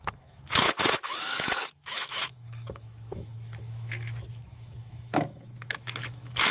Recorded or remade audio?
remade